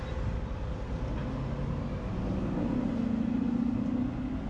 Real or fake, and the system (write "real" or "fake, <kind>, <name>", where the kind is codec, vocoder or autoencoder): real